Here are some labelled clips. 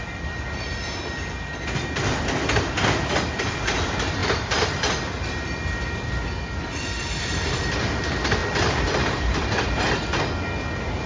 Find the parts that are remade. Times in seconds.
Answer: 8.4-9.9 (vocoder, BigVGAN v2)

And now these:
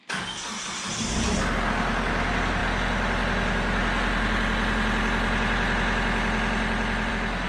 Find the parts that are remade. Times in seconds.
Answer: none

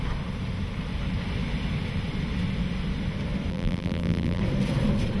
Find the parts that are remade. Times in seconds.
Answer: 3.5-4.4 (vocoder, BigVGAN v2)

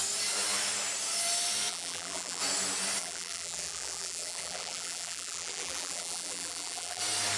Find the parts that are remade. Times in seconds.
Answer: 1.7-2.4 (vocoder, BigVGAN v2); 3.0-7.0